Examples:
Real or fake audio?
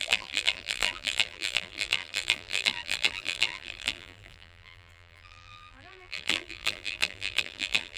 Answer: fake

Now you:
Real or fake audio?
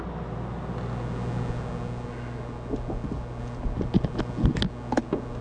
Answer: real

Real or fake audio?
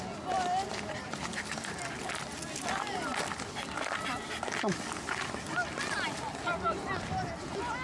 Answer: real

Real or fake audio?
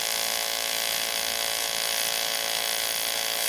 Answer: real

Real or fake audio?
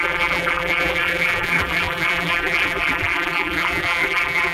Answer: fake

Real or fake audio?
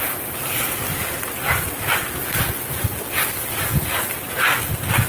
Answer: real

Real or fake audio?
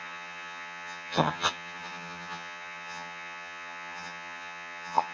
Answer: fake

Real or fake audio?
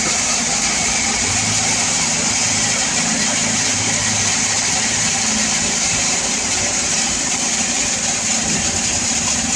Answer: fake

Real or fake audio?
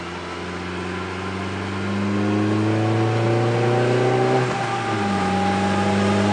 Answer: real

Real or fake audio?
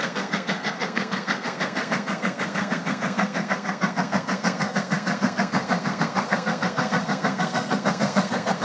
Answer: fake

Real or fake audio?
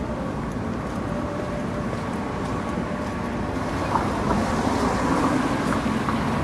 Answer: real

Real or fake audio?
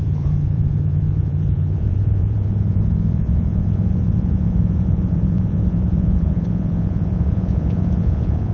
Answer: fake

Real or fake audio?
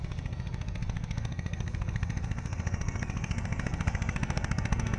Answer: fake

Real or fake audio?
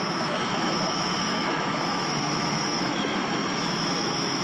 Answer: fake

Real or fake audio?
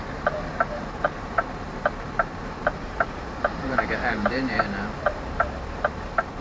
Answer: fake